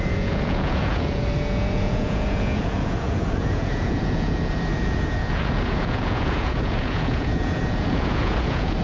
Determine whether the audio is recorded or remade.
remade